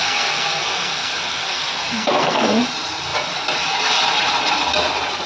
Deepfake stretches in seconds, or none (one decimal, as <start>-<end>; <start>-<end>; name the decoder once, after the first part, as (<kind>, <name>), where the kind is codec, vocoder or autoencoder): 0.0-2.6 (codec, SNAC)